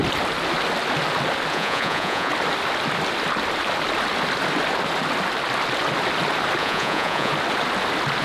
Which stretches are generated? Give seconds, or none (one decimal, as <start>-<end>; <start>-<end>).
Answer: 1.5-2.3; 6.6-7.3